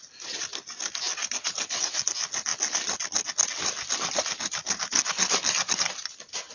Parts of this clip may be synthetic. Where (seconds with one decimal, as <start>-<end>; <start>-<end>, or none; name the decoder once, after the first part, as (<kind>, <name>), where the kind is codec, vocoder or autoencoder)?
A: none